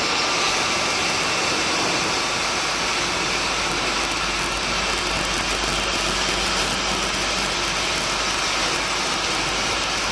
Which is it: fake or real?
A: real